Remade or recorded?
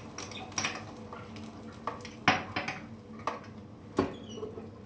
recorded